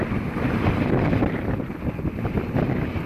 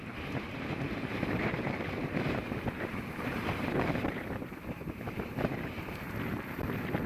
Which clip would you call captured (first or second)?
first